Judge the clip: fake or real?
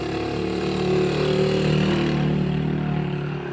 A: real